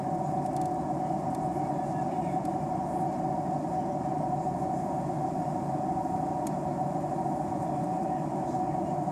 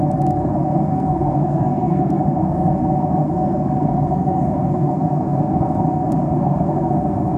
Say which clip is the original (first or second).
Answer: first